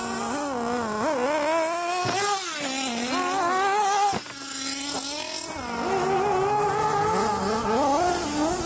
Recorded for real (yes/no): yes